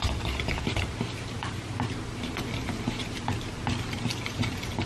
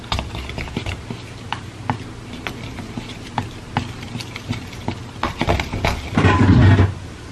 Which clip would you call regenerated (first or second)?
first